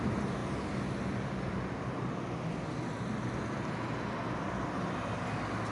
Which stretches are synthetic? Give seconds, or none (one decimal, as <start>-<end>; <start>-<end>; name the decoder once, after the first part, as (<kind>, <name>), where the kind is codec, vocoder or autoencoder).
none